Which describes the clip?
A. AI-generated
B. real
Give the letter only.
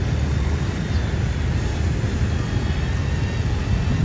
B